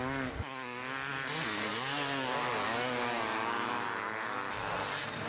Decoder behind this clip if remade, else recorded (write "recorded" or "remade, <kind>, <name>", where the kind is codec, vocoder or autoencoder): recorded